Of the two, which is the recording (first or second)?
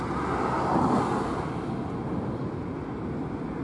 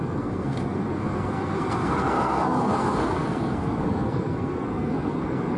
first